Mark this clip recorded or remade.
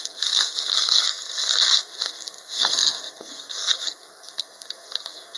remade